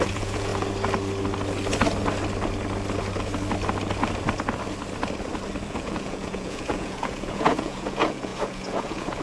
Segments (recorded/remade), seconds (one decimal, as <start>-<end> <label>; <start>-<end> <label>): 0.0-0.5 remade; 0.5-5.7 recorded; 5.7-9.2 remade